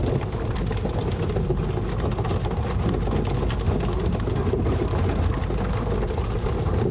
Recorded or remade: recorded